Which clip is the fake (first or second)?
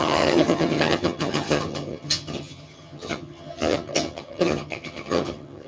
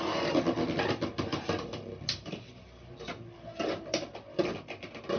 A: first